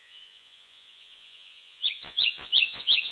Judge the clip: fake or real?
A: fake